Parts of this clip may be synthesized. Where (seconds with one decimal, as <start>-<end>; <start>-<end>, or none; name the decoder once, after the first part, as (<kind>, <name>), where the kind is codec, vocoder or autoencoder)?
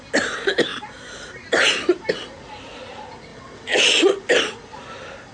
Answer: 3.3-3.8 (vocoder, WaveNeXt)